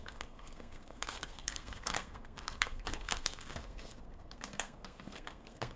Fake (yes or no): yes